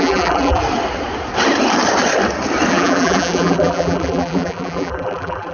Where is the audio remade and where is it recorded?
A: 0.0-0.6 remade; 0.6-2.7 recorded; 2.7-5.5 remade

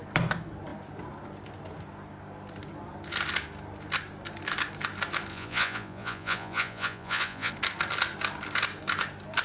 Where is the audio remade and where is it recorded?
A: 0.0-5.3 recorded; 5.3-7.5 remade; 7.5-9.4 recorded

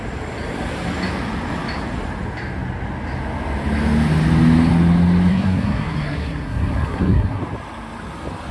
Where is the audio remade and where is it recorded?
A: 0.0-5.3 recorded; 5.3-7.4 remade; 7.4-8.5 recorded

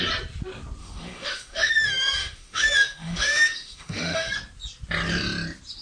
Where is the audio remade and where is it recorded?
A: 0.0-0.8 recorded; 0.8-4.3 remade; 4.3-5.8 recorded